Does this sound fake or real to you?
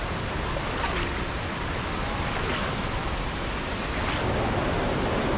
real